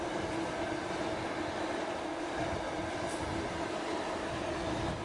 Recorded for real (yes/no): yes